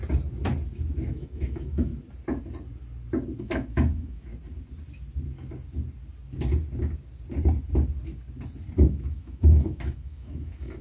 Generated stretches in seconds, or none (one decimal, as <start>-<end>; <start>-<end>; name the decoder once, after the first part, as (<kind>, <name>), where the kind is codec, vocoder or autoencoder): 1.1-1.9 (autoencoder, DAC-VAE); 3.4-4.3; 8.9-10.8